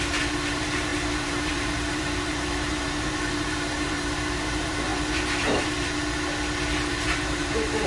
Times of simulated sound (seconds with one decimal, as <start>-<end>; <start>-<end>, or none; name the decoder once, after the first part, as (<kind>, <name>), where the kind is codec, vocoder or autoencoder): 0.0-6.0 (vocoder, BigVGAN v2); 6.9-7.9